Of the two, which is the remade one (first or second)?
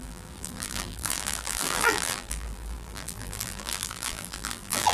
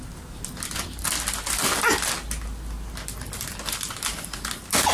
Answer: first